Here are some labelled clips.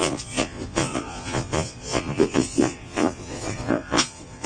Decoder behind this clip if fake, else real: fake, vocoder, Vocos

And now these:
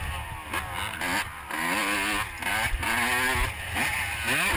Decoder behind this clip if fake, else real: real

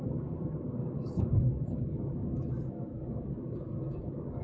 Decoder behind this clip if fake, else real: fake, codec, DAC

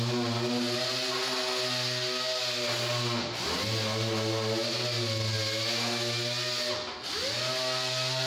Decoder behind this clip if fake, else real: real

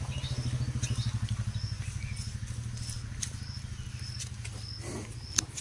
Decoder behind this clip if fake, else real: real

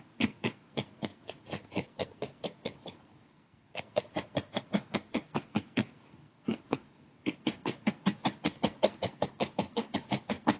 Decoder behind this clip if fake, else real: fake, codec, SNAC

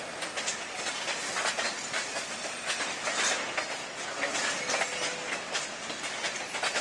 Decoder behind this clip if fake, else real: real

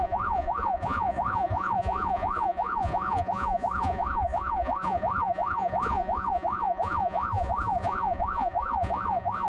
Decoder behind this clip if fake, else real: fake, vocoder, Vocos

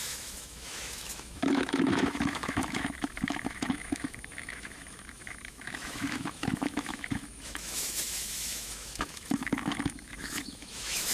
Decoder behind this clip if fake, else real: fake, autoencoder, DAC-VAE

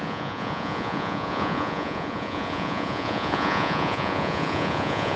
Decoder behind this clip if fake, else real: fake, vocoder, Vocos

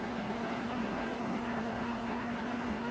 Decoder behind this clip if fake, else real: fake, codec, SNAC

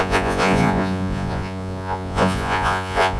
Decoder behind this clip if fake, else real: fake, vocoder, Vocos